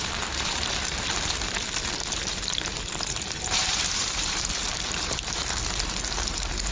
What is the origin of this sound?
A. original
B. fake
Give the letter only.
B